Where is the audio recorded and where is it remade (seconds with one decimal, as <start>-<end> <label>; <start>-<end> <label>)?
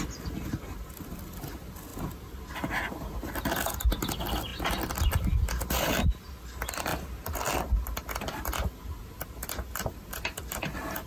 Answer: 0.0-11.1 recorded